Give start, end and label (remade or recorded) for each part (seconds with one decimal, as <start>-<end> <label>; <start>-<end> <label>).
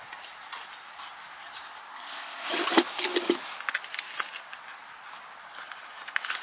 0.0-1.9 recorded; 1.9-2.5 remade; 2.5-6.4 recorded